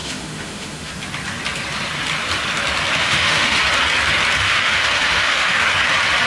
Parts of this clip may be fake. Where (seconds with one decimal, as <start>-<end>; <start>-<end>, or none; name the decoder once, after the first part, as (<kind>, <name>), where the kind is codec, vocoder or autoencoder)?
0.0-0.9 (autoencoder, DAC-VAE); 3.0-3.6; 4.4-5.6